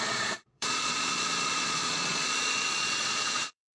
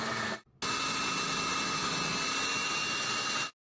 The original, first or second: second